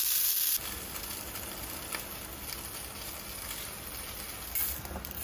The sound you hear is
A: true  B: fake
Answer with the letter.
A